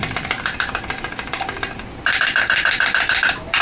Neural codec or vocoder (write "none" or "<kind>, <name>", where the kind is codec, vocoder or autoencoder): none